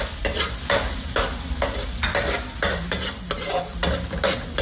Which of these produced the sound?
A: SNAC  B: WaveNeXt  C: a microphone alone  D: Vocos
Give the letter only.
C